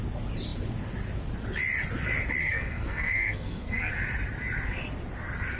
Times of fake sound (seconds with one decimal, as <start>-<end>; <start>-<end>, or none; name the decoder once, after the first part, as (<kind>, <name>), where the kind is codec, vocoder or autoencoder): 2.4-3.9 (codec, SNAC)